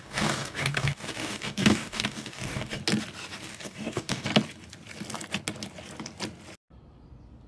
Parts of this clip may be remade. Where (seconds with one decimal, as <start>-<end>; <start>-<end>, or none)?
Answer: 0.0-2.8; 3.4-4.3